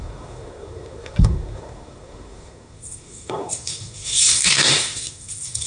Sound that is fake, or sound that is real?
fake